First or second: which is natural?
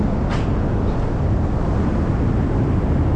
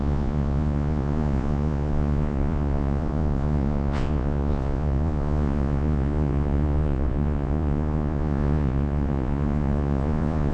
first